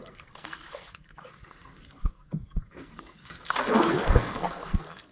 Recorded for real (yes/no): no